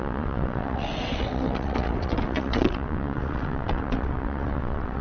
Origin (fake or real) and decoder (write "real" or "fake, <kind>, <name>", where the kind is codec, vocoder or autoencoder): fake, vocoder, WaveNeXt